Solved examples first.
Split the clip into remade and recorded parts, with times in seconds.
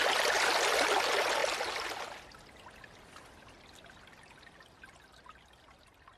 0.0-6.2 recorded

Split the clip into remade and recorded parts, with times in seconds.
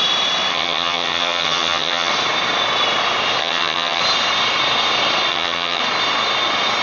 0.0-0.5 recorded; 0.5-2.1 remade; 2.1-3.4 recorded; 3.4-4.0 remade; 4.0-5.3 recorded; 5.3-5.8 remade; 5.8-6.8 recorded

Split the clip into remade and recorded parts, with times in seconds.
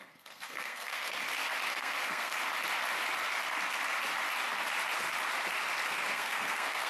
0.0-1.2 remade; 1.2-1.7 recorded; 1.7-2.3 remade; 2.3-5.9 recorded; 5.9-6.9 remade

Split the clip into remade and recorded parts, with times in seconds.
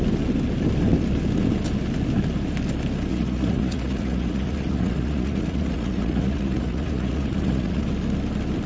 0.0-3.1 recorded; 3.1-7.8 remade; 7.8-8.7 recorded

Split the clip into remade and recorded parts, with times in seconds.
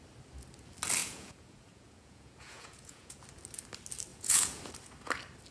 0.0-1.0 recorded; 1.0-3.2 remade; 3.2-4.1 recorded; 4.1-4.6 remade; 4.6-5.5 recorded